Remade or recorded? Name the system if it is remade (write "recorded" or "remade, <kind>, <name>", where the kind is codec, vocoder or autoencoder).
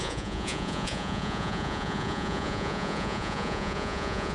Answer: remade, vocoder, Vocos